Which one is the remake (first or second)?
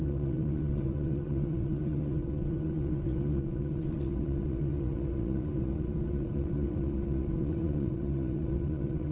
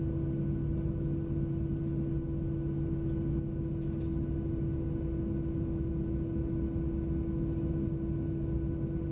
first